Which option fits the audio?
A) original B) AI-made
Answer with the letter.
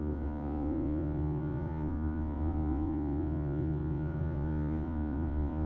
B